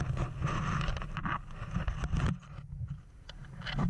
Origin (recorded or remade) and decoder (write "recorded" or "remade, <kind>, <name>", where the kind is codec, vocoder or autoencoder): recorded